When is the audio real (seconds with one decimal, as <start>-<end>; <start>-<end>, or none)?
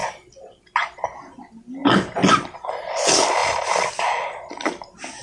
0.0-5.2